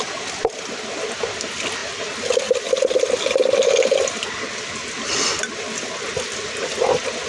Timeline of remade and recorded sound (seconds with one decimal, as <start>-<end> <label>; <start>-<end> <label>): 0.0-7.3 recorded